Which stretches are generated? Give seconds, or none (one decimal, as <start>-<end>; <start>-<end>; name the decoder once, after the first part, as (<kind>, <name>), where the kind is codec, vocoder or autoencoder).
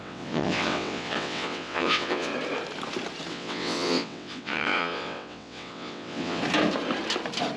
0.0-2.3 (vocoder, WaveNeXt); 3.3-6.4